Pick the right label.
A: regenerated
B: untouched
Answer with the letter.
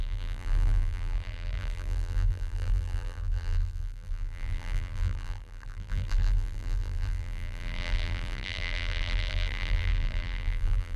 A